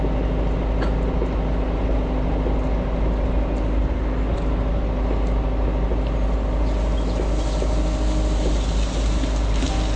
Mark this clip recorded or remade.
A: recorded